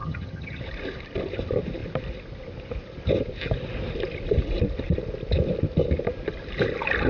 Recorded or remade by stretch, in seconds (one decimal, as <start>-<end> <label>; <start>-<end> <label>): 0.0-0.6 remade; 0.6-7.1 recorded